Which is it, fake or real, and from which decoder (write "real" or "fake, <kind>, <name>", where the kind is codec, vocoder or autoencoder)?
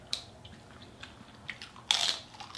real